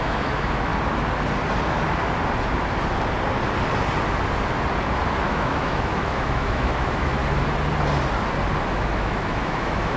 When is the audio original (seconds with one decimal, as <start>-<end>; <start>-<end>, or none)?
0.7-5.2; 7.2-8.7